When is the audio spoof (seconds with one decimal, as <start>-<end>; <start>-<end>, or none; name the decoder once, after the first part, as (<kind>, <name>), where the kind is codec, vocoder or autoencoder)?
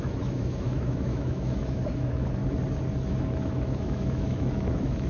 0.0-2.4 (autoencoder, DAC-VAE); 3.1-5.1